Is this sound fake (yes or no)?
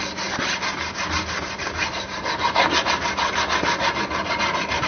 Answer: no